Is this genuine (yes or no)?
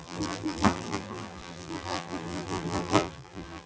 no